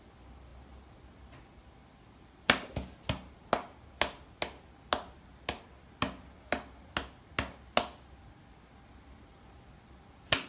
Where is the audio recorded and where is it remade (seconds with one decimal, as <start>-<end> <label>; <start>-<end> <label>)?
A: 0.0-10.5 recorded